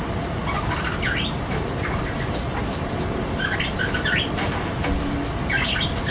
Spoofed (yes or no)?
no